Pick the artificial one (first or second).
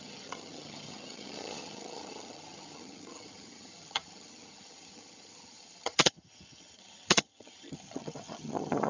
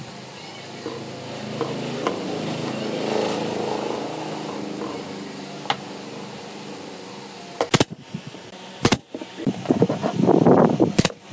first